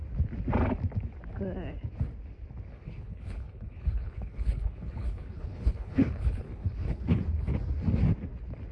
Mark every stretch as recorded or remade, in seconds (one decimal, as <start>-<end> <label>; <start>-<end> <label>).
0.0-2.7 recorded; 2.7-7.2 remade; 7.2-8.7 recorded